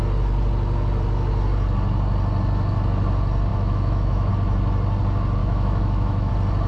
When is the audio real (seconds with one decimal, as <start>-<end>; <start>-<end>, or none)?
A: 0.0-3.5; 4.3-5.4; 6.3-6.7